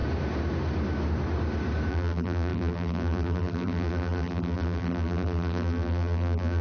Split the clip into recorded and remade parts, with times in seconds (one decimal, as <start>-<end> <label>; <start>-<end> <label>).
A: 0.0-1.9 recorded; 1.9-6.6 remade